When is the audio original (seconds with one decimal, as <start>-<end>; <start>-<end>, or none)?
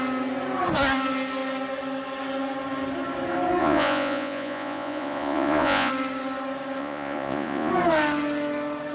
0.0-3.6; 5.9-6.8; 7.7-8.9